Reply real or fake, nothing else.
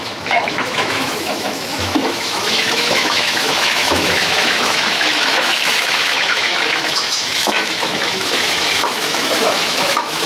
fake